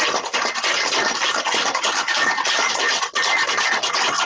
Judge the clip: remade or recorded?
recorded